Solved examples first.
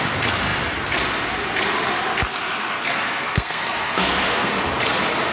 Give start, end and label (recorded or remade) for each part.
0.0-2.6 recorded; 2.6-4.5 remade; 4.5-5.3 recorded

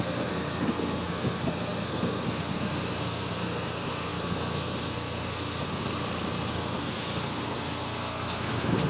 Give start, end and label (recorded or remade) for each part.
0.0-5.9 remade; 5.9-6.5 recorded; 6.5-8.9 remade